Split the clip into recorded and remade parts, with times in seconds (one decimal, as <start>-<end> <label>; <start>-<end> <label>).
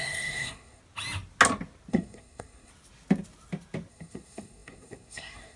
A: 0.0-0.8 remade; 0.8-1.9 recorded; 1.9-2.7 remade; 2.7-3.9 recorded; 3.9-5.6 remade